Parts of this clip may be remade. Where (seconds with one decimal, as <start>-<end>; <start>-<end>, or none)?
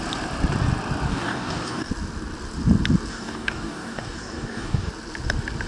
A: 1.1-1.9; 3.1-4.9